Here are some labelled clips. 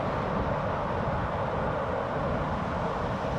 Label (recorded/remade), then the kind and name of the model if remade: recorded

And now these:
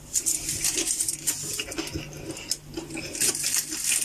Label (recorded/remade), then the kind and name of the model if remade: recorded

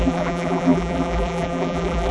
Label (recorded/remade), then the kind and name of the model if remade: remade, vocoder, BigVGAN v2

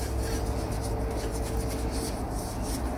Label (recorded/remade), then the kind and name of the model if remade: recorded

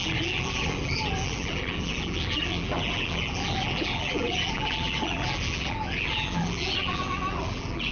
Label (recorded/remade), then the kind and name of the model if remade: remade, vocoder, BigVGAN v2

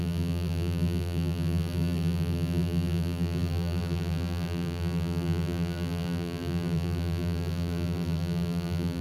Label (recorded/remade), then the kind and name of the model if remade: remade, vocoder, BigVGAN v2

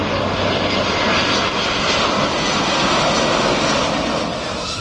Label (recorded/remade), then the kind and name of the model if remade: recorded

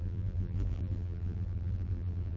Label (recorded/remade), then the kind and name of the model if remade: remade, vocoder, BigVGAN v2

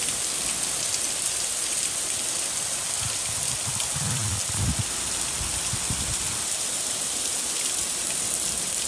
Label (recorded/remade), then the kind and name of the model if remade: recorded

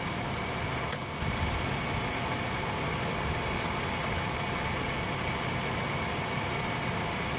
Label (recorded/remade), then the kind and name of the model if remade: recorded